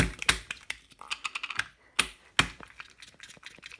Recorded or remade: recorded